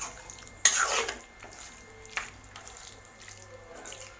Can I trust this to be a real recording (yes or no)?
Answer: yes